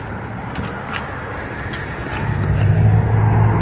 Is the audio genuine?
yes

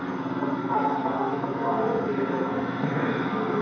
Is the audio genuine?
no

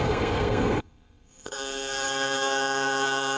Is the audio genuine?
no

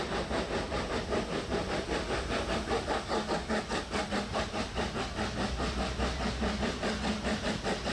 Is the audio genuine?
yes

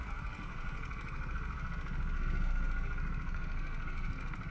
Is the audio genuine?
no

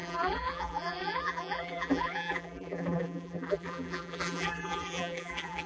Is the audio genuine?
no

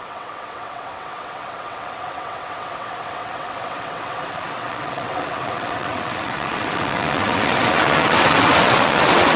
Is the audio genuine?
no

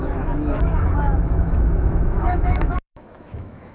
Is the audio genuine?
no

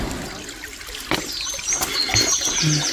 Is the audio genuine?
yes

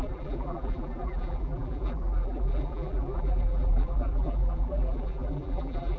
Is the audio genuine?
no